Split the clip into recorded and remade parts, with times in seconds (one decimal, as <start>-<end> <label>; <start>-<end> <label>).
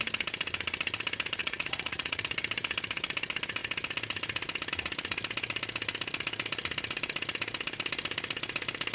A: 0.0-1.4 recorded; 1.4-2.2 remade; 2.2-8.9 recorded